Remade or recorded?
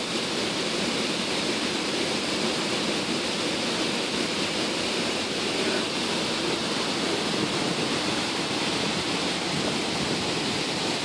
remade